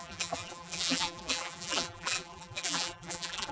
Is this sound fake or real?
fake